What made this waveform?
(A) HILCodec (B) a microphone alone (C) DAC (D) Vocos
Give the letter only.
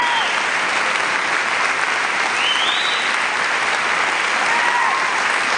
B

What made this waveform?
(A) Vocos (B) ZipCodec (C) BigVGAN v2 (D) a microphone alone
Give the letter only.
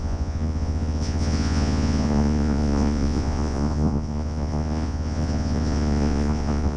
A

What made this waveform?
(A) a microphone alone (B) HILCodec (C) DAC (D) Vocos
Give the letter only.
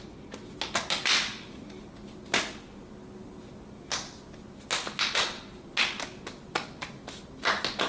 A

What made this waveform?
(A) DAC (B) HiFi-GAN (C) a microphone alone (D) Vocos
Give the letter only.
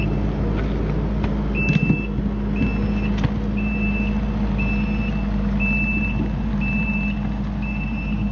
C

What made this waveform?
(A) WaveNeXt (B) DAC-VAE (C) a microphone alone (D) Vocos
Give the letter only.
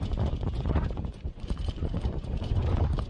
D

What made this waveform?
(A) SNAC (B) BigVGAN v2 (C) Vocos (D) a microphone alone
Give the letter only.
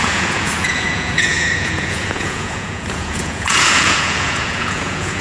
C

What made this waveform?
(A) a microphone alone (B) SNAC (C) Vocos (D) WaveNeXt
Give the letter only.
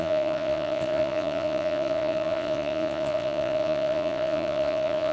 C